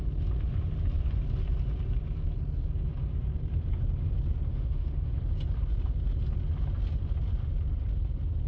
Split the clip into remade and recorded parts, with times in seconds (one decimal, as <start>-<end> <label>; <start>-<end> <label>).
0.0-4.5 recorded; 4.5-5.1 remade; 5.1-8.5 recorded